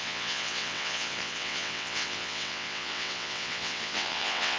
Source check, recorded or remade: remade